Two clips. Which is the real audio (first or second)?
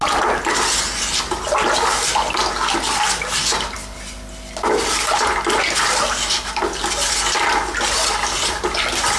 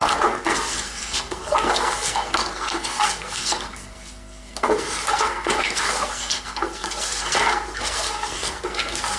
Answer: first